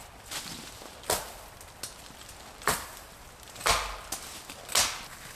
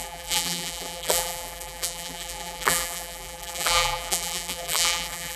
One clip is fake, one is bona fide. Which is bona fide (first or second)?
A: first